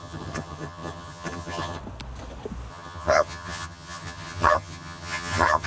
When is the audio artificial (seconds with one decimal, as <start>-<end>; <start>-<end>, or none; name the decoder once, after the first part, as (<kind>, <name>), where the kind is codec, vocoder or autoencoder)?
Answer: 0.0-1.8 (vocoder, HiFi-GAN); 2.7-5.7